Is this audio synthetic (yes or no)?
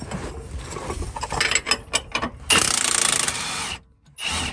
no